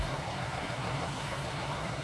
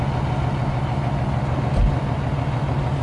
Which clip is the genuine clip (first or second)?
second